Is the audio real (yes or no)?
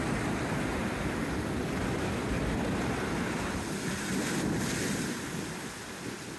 yes